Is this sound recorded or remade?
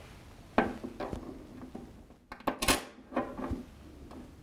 recorded